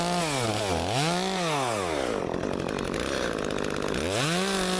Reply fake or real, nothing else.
real